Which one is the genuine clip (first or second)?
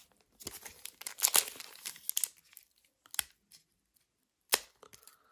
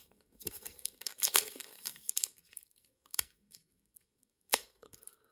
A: first